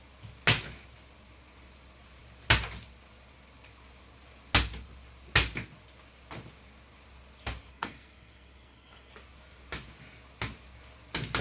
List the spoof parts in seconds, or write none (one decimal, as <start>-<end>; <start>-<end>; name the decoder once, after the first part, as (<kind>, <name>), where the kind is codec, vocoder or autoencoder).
7.7-9.1 (codec, SNAC)